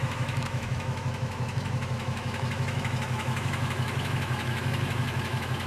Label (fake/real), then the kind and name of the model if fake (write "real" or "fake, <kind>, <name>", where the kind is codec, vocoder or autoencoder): fake, autoencoder, DAC-VAE